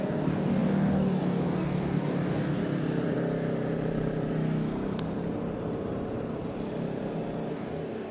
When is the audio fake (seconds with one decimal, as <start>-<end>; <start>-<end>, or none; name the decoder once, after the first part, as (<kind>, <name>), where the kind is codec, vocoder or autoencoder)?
0.0-2.6 (codec, DAC); 7.5-8.1